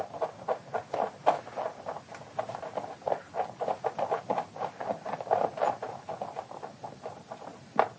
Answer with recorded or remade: recorded